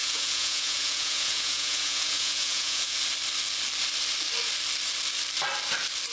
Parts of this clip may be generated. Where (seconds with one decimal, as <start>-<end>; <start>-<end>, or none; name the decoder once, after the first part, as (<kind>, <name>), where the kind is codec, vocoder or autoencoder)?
0.0-3.0 (vocoder, Vocos)